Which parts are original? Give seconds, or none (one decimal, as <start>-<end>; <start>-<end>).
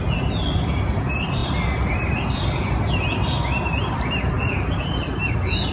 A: 0.0-5.7